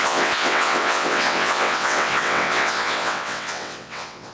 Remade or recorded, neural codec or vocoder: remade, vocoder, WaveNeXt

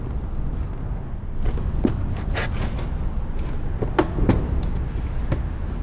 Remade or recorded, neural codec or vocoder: recorded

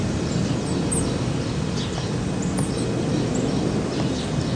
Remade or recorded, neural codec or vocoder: recorded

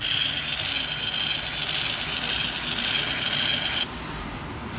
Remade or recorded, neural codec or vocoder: recorded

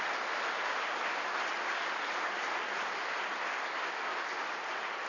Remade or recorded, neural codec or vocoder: recorded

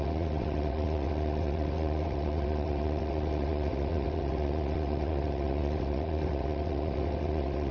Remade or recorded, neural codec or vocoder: remade, vocoder, WaveNeXt